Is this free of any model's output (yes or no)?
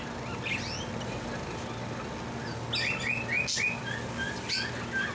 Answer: yes